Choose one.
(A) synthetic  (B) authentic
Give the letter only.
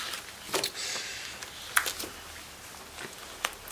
B